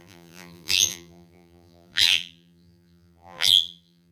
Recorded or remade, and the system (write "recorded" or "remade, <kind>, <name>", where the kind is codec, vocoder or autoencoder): remade, vocoder, BigVGAN v2